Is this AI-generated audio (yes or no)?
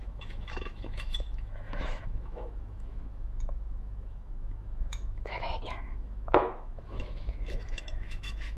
yes